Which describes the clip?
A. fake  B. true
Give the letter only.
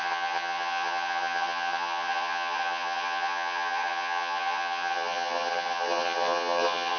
A